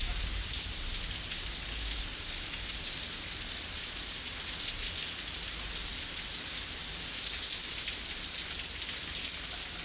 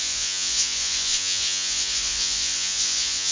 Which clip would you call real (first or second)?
first